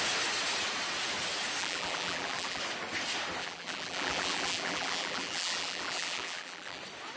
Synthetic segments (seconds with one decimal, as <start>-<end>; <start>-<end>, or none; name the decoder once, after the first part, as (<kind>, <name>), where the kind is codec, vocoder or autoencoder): 1.6-2.6 (vocoder, BigVGAN v2); 3.4-6.8